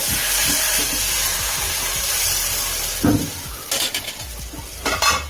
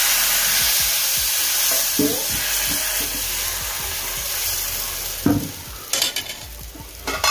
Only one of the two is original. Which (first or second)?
second